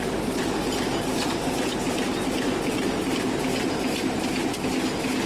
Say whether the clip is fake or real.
real